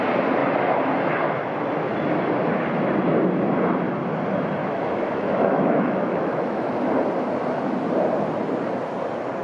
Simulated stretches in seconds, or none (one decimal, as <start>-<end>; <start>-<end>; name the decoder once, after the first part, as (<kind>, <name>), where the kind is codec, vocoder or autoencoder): 4.6-6.7 (autoencoder, DAC-VAE)